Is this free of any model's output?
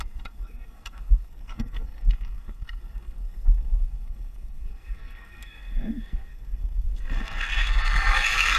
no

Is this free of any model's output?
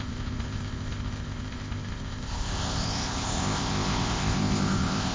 no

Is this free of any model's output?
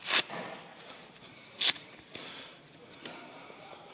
yes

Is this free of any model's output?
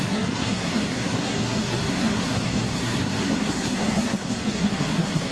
no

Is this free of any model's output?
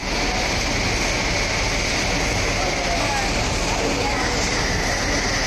yes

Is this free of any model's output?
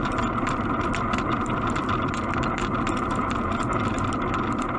no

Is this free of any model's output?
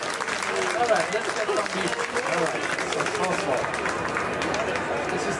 yes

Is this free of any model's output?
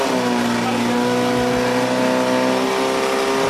yes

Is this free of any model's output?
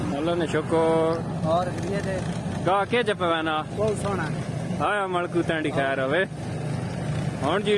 yes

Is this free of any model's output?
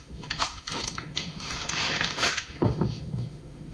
no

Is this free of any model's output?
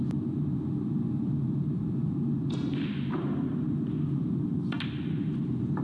no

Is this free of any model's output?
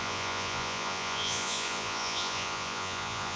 no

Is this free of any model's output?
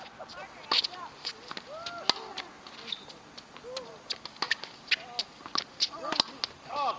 yes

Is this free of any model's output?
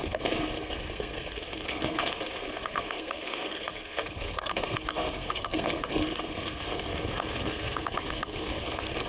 no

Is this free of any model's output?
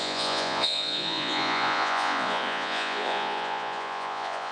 no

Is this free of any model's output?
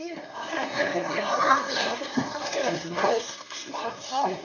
no